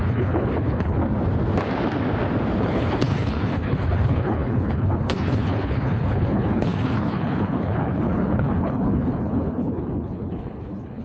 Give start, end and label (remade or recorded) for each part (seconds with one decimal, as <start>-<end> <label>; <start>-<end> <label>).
0.0-1.0 remade; 1.0-2.6 recorded; 2.6-11.0 remade